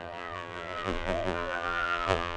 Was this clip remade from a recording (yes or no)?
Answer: yes